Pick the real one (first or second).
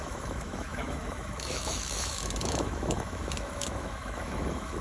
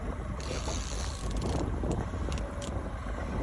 second